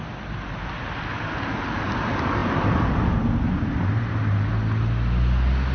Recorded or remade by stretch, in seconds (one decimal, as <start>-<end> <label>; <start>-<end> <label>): 0.0-5.7 recorded